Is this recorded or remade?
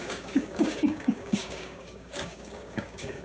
remade